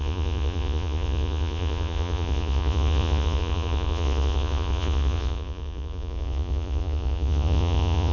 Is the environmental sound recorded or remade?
remade